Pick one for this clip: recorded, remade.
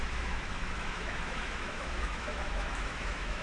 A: remade